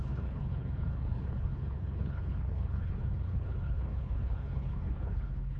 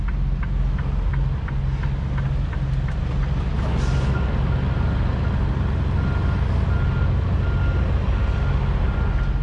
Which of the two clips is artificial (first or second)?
first